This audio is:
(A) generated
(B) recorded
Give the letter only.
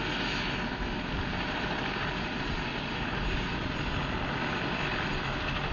B